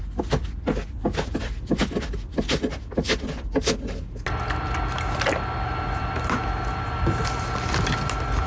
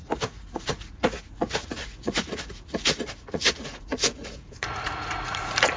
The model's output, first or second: second